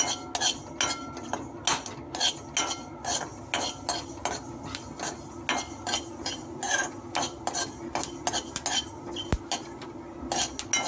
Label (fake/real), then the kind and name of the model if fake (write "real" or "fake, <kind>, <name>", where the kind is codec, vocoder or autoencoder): real